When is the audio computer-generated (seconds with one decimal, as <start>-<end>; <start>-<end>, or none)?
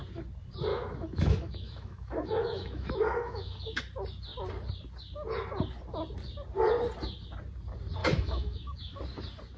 0.7-3.8; 8.0-9.0